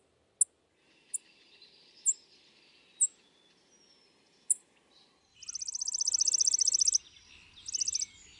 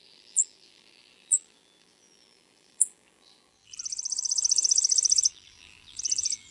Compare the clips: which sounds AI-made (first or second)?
second